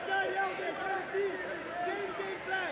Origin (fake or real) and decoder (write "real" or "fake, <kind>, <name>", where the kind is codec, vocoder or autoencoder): real